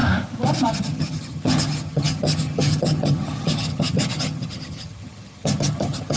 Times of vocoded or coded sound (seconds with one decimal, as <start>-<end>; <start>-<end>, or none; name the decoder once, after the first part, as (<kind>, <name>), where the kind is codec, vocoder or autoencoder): 0.7-6.2 (vocoder, HiFi-GAN)